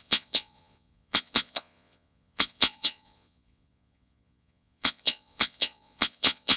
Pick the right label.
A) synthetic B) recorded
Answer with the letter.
A